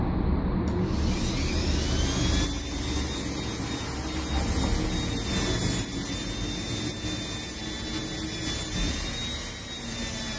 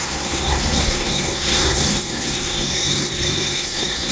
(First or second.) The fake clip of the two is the second